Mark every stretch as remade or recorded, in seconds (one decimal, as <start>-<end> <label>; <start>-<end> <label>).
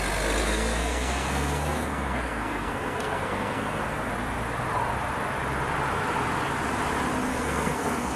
0.0-0.4 recorded; 0.4-4.1 remade; 4.1-7.3 recorded; 7.3-8.2 remade